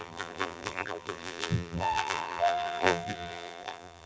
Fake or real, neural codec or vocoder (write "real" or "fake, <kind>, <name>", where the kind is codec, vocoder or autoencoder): fake, vocoder, BigVGAN v2